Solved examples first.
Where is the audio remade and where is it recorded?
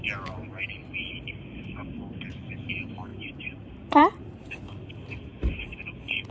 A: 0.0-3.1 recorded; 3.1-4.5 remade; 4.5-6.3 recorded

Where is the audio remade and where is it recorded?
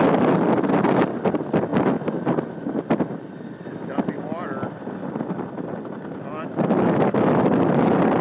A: 0.0-8.2 recorded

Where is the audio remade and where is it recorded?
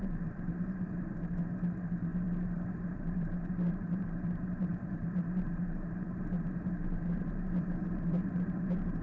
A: 0.0-2.1 remade; 2.1-2.7 recorded; 2.7-9.0 remade